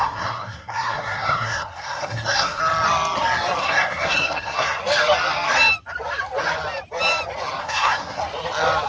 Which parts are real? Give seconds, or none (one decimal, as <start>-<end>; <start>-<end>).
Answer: 2.6-3.6; 4.8-7.6; 8.2-8.9